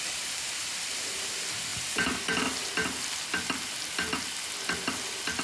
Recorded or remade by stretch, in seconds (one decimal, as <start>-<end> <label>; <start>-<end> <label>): 0.0-5.4 recorded